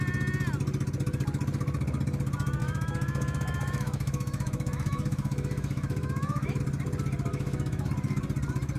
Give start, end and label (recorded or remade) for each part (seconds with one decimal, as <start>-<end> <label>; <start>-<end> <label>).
0.0-2.6 recorded; 2.6-6.6 remade; 6.6-7.3 recorded; 7.3-7.9 remade; 7.9-8.8 recorded

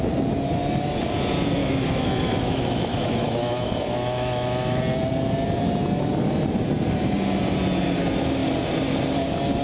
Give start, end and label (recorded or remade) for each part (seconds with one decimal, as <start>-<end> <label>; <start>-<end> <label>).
0.0-1.6 recorded; 1.6-4.8 remade; 4.8-9.6 recorded

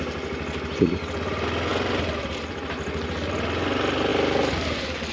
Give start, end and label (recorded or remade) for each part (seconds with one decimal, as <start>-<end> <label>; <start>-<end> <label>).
0.0-5.1 recorded